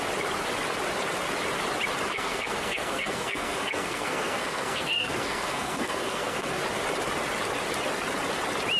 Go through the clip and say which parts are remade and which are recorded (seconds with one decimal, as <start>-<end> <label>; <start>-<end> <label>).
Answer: 0.0-2.1 recorded; 2.1-6.6 remade; 6.6-8.8 recorded